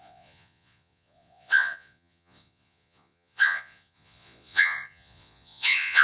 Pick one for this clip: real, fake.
fake